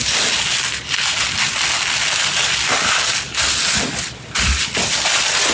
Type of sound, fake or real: real